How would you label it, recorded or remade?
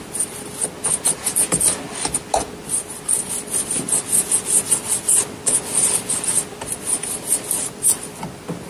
recorded